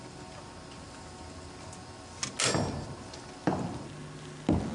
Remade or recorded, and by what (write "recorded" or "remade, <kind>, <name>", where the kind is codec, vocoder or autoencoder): recorded